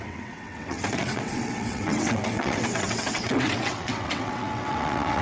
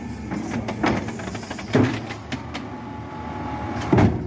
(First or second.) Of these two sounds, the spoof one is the first